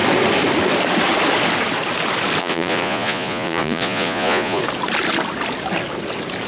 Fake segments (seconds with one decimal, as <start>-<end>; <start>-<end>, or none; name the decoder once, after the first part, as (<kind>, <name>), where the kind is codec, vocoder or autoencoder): 2.4-4.6 (vocoder, Vocos)